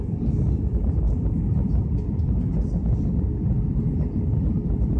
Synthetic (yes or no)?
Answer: no